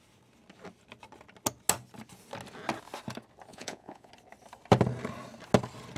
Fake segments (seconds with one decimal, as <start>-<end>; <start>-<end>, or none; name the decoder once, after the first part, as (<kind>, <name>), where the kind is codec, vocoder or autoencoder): 3.5-4.1 (vocoder, Vocos)